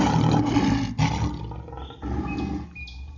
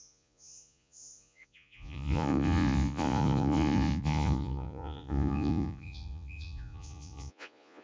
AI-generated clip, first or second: second